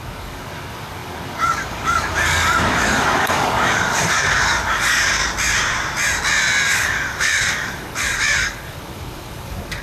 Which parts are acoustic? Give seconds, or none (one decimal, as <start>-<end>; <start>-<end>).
5.2-6.7